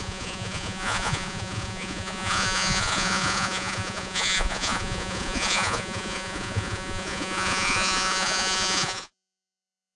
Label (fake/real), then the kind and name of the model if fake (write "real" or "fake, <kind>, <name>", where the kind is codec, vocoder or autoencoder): fake, vocoder, Vocos